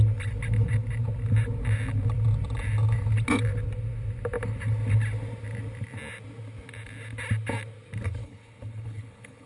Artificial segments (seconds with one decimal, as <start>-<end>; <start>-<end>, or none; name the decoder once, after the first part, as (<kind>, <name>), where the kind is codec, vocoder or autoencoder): 8.2-9.5 (codec, HILCodec)